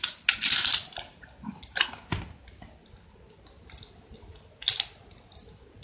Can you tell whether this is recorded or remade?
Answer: recorded